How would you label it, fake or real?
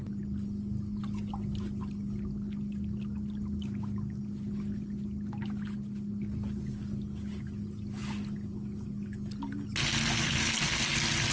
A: real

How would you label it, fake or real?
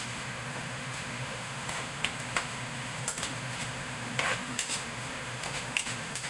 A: fake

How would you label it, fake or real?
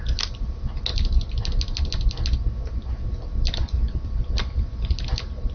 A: real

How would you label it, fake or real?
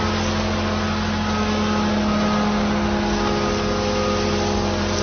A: real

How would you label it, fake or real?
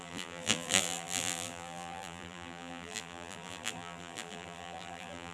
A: fake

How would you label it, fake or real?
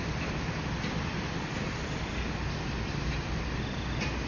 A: real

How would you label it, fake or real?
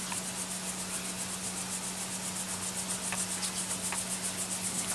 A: real